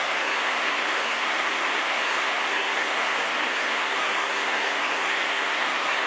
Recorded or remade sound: remade